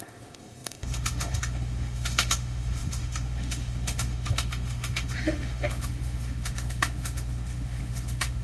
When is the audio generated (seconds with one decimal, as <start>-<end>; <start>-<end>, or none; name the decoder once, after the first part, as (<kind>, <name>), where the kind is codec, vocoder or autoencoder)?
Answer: 0.0-8.4 (autoencoder, DAC-VAE)